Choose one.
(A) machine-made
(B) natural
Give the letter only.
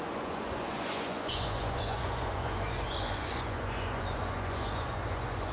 A